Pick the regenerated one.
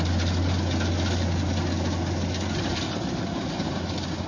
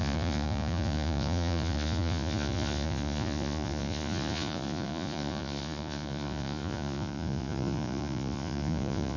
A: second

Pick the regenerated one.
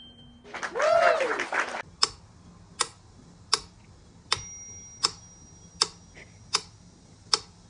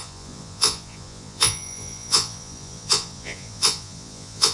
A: second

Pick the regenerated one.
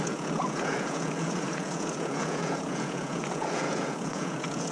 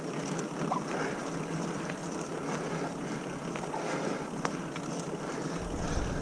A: first